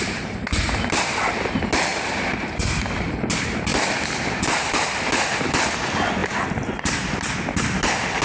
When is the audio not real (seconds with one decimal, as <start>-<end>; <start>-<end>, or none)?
3.7-4.7; 6.2-7.3